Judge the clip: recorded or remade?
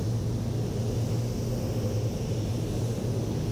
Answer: recorded